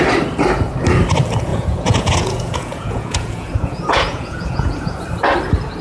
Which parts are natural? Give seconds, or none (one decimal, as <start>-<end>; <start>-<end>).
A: 0.0-1.5; 5.0-5.8